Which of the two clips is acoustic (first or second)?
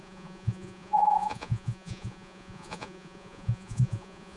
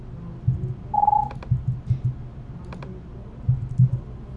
second